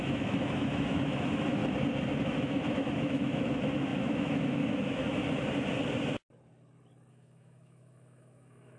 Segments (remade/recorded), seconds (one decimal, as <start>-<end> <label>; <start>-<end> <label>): 0.0-1.6 remade; 1.6-2.2 recorded; 2.2-5.2 remade; 5.2-7.1 recorded; 7.1-8.8 remade